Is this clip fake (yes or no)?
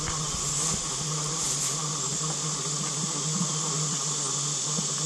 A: no